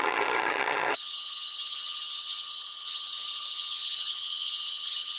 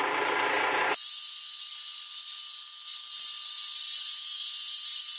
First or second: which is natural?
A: second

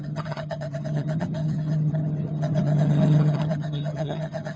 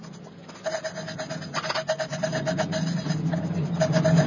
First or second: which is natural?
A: second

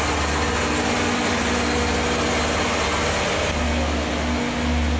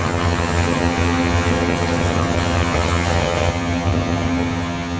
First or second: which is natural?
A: first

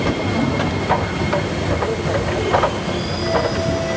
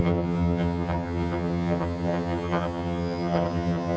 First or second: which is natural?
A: first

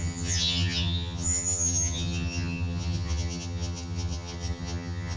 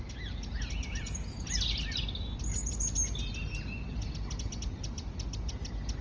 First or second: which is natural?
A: second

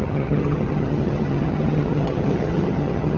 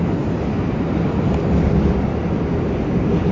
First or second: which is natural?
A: second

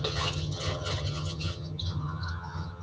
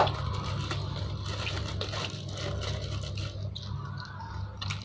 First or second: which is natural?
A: second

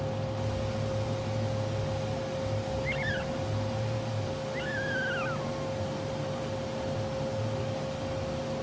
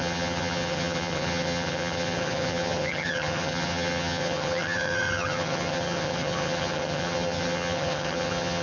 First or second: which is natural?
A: first